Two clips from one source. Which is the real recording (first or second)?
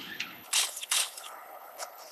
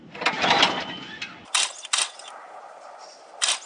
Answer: second